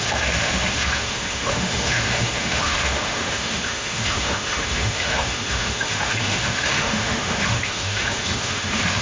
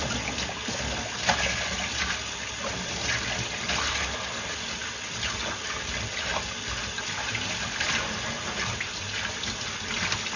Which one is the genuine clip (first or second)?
second